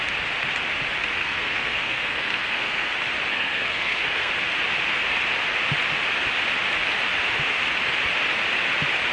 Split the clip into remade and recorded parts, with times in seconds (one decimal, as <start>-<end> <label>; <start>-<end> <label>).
0.0-1.2 recorded; 1.2-2.9 remade; 2.9-3.3 recorded; 3.3-4.3 remade; 4.3-9.1 recorded